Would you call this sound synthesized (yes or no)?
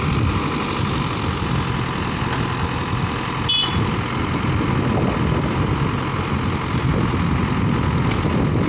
no